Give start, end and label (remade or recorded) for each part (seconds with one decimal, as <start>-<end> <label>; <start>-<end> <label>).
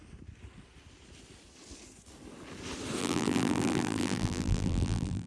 0.0-3.0 recorded; 3.0-5.3 remade